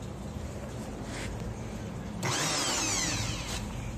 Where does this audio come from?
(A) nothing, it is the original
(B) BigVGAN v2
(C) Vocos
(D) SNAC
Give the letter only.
A